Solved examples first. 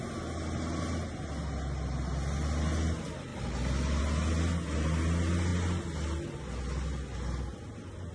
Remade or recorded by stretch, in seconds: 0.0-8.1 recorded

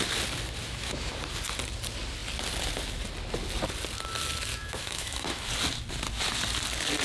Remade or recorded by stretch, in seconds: 0.0-0.6 recorded; 0.6-1.2 remade; 1.2-4.5 recorded; 4.5-5.5 remade; 5.5-7.0 recorded